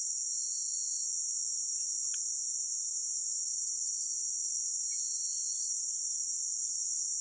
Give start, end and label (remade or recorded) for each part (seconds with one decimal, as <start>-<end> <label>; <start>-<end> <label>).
0.0-5.4 recorded; 5.4-6.3 remade; 6.3-7.2 recorded